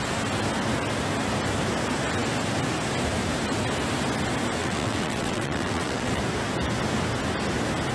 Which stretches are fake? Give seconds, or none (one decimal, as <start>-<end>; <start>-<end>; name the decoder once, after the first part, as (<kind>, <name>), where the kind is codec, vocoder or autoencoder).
4.6-6.2 (vocoder, WaveNeXt)